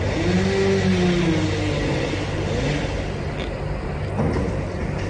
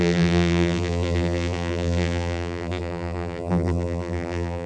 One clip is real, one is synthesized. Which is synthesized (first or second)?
second